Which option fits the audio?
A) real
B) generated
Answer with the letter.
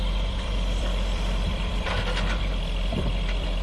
B